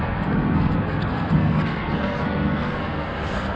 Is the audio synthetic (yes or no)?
yes